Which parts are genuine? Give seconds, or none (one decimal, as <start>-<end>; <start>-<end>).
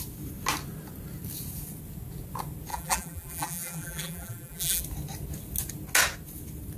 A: 0.0-2.7; 4.8-6.8